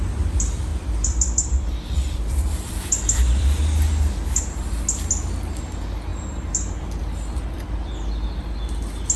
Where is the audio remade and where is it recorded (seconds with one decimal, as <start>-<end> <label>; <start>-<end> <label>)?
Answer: 0.0-0.7 recorded; 0.7-4.8 remade; 4.8-9.2 recorded